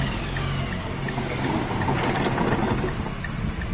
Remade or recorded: recorded